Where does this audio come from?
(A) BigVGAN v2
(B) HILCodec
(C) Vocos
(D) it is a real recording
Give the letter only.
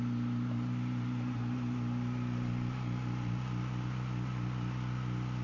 D